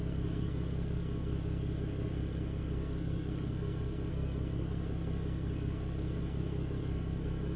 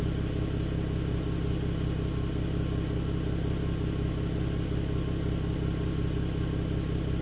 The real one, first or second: second